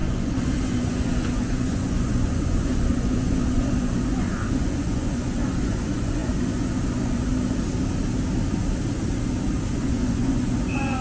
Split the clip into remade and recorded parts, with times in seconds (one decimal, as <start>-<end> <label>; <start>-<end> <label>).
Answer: 0.0-7.3 remade; 7.3-9.7 recorded; 9.7-11.0 remade